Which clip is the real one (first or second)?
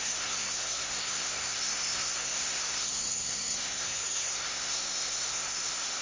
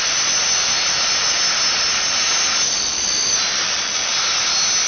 second